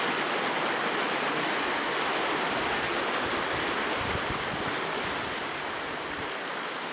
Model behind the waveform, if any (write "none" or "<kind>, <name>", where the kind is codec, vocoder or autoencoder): none